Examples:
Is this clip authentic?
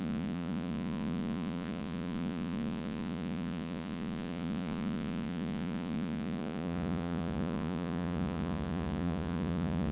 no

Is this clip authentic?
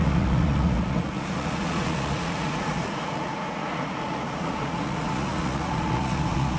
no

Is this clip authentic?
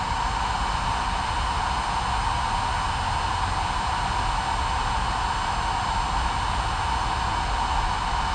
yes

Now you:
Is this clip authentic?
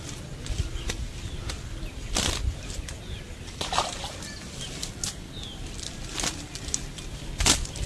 yes